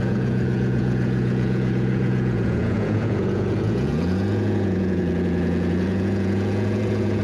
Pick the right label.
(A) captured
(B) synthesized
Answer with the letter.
B